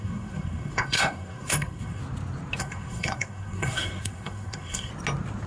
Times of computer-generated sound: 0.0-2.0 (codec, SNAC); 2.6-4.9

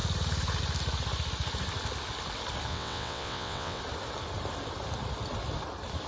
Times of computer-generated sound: 2.7-3.8 (vocoder, WaveNeXt)

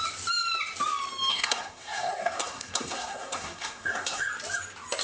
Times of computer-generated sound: 1.3-4.3 (codec, SNAC)

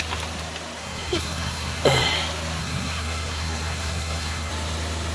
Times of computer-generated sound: 0.8-1.8 (codec, SNAC); 2.6-4.5

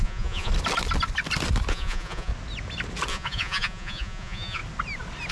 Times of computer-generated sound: 0.0-0.5 (vocoder, Vocos); 1.7-2.3; 3.1-4.6

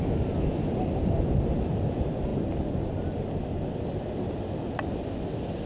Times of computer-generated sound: none

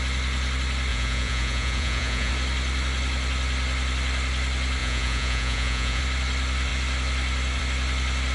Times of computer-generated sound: 0.9-2.3 (vocoder, Vocos); 4.8-6.0